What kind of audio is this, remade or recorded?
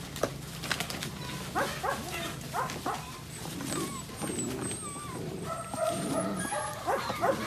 recorded